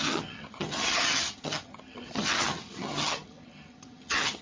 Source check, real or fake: fake